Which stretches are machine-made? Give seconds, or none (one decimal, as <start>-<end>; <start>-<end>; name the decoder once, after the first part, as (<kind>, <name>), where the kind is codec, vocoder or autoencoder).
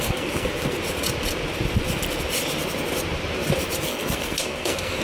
0.0-0.8 (codec, SNAC); 3.8-5.0